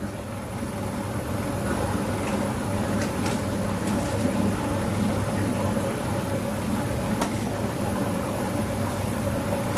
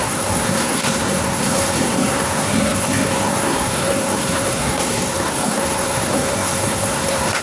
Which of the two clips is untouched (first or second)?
first